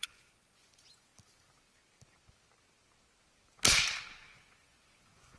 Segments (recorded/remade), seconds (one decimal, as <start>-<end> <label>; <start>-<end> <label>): 0.0-1.1 remade; 1.1-4.3 recorded; 4.3-5.4 remade